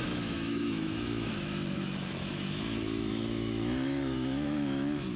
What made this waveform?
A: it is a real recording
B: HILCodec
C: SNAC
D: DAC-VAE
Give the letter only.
D